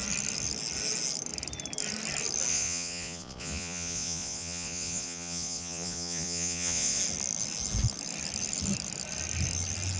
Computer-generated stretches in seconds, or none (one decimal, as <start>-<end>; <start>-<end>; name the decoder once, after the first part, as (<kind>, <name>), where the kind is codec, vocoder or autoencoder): 2.5-7.0 (vocoder, Vocos)